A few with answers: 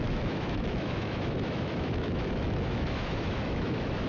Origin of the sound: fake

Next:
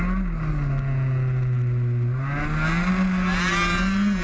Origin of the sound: real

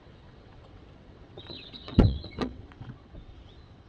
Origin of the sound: fake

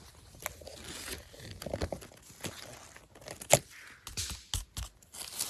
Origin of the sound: real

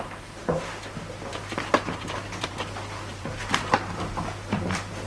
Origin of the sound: fake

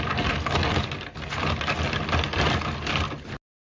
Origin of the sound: real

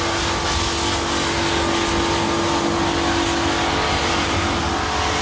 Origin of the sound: real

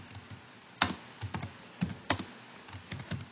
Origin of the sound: real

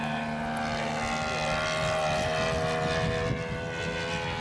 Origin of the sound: real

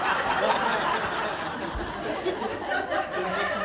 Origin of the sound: fake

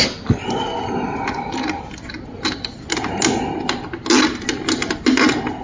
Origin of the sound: real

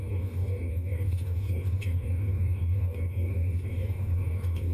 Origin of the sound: fake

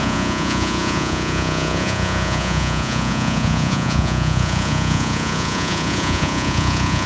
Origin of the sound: fake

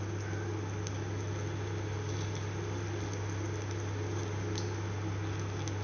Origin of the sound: real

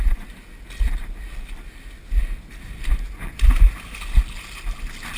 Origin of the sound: real